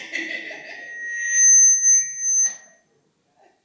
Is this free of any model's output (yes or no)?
yes